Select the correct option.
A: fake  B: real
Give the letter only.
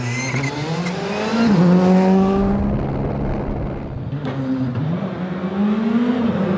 B